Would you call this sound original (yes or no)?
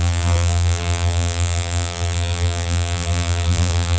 no